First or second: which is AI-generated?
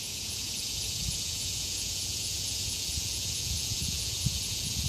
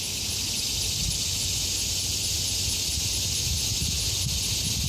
first